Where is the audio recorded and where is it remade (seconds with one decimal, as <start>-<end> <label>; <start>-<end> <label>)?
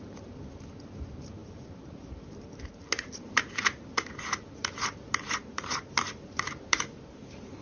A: 0.0-7.6 remade